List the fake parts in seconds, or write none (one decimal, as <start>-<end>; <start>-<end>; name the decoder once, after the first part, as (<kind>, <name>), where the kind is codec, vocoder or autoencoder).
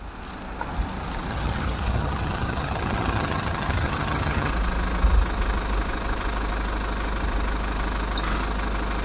1.3-4.5 (vocoder, HiFi-GAN)